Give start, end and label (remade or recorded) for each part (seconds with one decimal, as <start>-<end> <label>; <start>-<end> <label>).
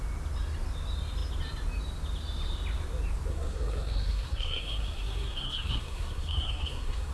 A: 0.0-3.3 recorded; 3.3-7.1 remade